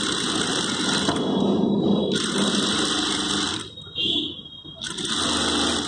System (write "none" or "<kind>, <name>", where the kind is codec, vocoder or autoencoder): none